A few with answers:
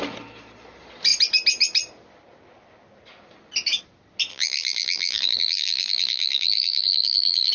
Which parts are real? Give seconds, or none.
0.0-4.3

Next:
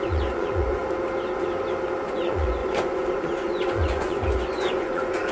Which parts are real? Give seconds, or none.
0.8-2.0

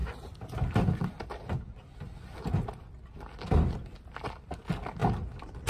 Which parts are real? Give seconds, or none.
0.0-5.7

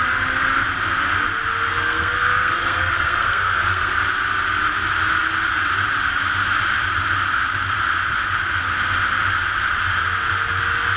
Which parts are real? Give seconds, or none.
0.0-1.7; 4.0-11.0

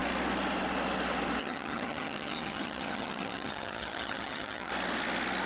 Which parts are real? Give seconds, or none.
0.0-1.4; 4.7-5.5

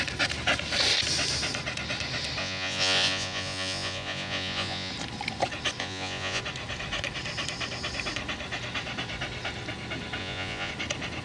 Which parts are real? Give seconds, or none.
0.0-2.4; 4.9-5.8; 6.4-10.2; 10.7-11.2